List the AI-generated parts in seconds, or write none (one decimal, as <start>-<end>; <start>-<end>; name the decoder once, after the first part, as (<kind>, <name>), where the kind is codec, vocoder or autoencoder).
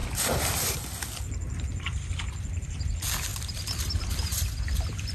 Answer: 0.0-1.2 (vocoder, BigVGAN v2); 3.3-4.5